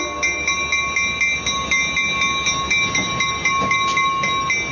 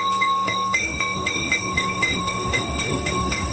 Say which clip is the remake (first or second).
second